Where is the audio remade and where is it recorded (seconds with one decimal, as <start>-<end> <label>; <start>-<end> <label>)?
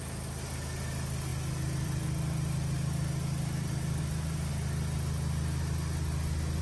0.0-1.3 recorded; 1.3-4.0 remade; 4.0-6.6 recorded